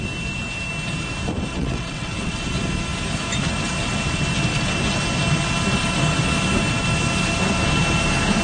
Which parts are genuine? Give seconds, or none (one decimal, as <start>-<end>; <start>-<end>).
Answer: 0.0-1.5; 2.4-8.4